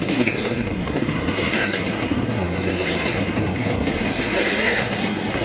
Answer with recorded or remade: remade